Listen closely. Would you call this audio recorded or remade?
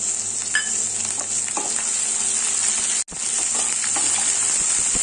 recorded